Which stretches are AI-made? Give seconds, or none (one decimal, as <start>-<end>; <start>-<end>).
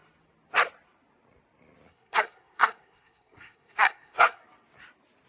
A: 1.9-4.4